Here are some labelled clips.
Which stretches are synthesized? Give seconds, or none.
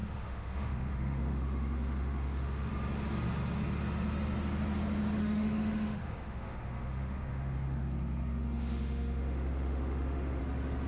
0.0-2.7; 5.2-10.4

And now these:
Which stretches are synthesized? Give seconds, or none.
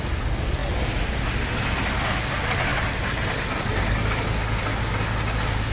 none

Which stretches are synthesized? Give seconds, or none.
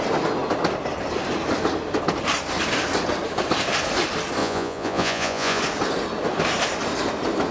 4.4-5.6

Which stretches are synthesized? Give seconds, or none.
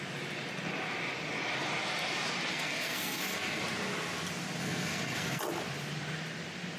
2.5-3.6; 4.6-5.4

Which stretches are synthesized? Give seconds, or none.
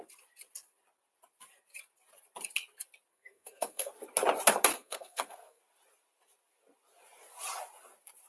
3.1-3.9; 4.7-5.6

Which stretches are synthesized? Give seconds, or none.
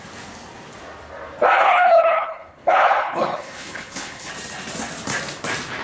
1.6-4.3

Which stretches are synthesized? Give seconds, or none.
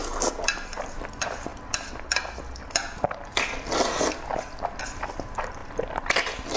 0.7-1.5; 4.8-6.6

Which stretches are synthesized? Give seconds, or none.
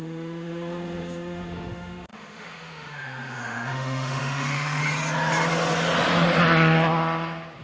0.0-4.8